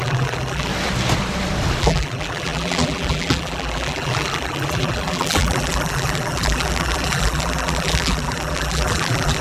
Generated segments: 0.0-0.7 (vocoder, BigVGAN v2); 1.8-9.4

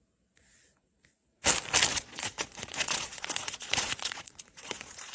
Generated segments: 1.9-5.1 (vocoder, Vocos)

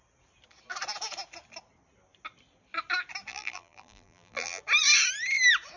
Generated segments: 3.3-4.6 (vocoder, BigVGAN v2)

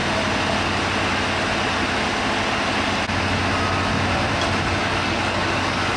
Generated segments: 4.8-6.0 (codec, DAC)